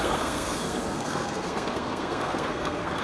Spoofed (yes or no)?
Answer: yes